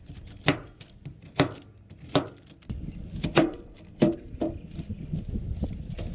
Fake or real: real